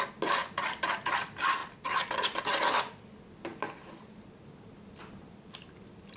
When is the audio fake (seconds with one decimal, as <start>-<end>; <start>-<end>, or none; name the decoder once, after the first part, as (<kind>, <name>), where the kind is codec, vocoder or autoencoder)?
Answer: none